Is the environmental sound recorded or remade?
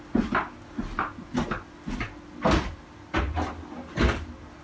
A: recorded